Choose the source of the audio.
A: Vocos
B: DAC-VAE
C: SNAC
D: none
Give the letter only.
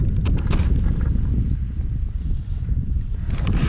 D